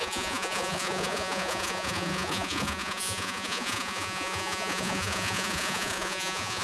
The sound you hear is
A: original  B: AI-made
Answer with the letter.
B